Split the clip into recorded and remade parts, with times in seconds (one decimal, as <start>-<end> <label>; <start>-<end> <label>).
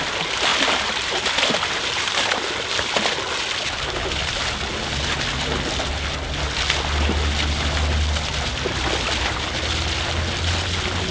0.0-11.1 recorded